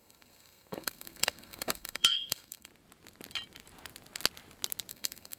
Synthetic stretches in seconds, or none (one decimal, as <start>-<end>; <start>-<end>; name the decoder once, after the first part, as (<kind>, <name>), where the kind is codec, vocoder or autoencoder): 0.0-2.7 (codec, SNAC); 4.9-5.4